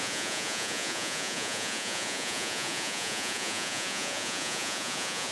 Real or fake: fake